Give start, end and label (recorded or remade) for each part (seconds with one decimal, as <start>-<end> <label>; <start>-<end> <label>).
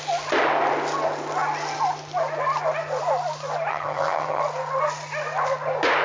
0.0-3.7 recorded; 3.7-4.4 remade; 4.4-6.0 recorded